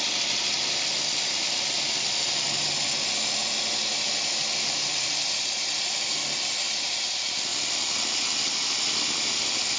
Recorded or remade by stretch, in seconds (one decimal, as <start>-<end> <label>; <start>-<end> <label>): 0.0-9.8 recorded